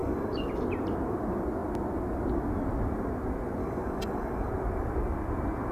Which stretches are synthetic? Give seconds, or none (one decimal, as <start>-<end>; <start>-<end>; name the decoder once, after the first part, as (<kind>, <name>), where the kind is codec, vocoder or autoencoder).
0.0-0.5 (codec, DAC); 3.6-4.5